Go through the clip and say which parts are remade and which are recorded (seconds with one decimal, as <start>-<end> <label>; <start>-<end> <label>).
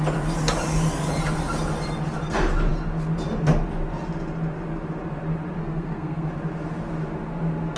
0.0-5.6 recorded; 5.6-6.3 remade; 6.3-7.8 recorded